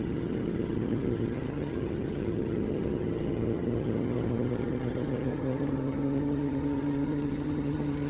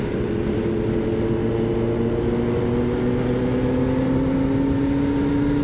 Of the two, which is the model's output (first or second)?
first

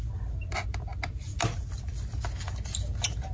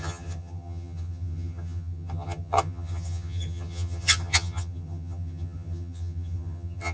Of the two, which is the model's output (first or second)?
second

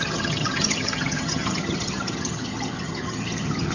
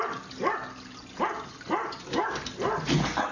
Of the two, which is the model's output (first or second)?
first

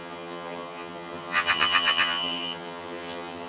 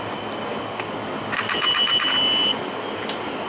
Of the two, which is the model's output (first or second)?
first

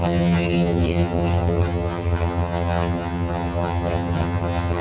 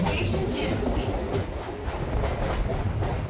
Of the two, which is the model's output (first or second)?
first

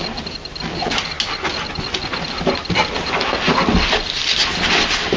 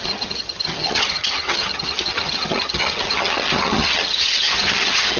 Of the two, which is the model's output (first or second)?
second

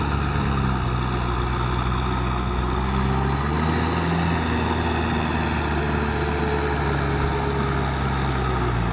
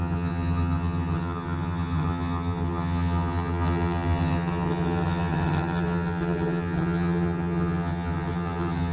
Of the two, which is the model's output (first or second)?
second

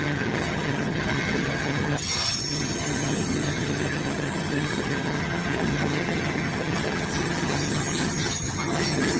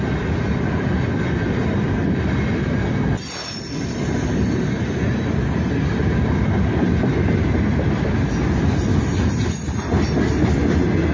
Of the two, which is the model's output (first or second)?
first